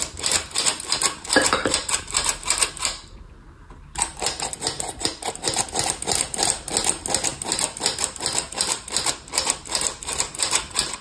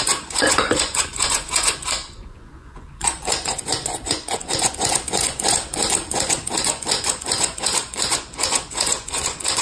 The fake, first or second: second